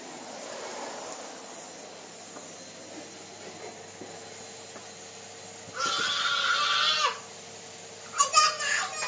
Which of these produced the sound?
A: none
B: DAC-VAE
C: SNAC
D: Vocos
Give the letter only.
A